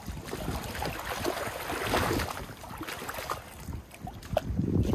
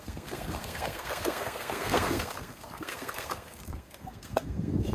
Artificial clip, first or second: second